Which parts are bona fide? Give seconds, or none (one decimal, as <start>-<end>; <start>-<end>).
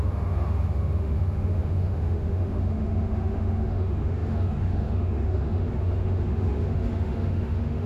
none